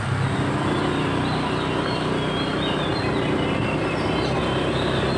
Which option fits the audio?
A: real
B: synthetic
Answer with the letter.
A